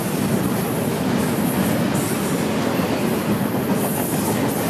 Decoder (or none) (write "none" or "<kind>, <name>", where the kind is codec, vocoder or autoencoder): none